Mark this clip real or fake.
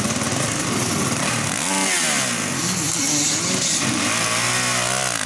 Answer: real